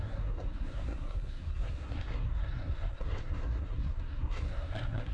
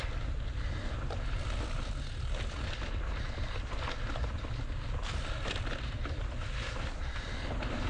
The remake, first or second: first